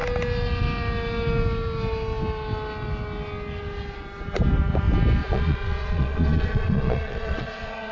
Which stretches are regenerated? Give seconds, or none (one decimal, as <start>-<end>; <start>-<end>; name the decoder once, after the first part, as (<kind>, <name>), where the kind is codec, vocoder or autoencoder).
5.2-7.9 (vocoder, Vocos)